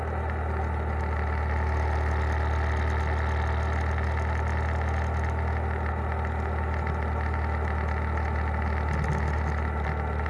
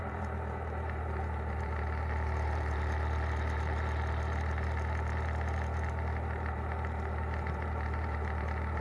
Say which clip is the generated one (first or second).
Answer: second